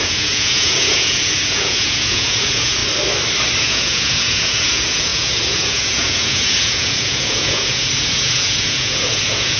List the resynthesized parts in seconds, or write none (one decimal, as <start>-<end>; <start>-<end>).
0.0-2.8; 3.6-9.6